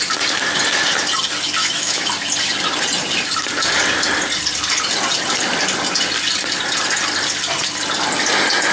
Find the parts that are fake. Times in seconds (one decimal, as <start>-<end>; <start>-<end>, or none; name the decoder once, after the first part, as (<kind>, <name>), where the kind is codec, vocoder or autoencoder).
1.6-2.1 (autoencoder, DAC-VAE)